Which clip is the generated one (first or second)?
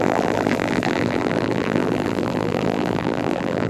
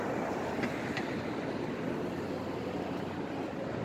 first